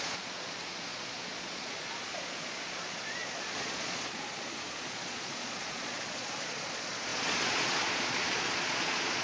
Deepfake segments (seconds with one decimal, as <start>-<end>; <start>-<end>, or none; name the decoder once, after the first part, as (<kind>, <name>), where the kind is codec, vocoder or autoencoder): 0.0-9.2 (vocoder, Vocos)